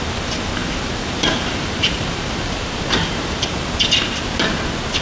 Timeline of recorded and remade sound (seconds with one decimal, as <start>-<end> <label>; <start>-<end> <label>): 0.0-0.6 recorded; 0.6-3.6 remade; 3.6-5.0 recorded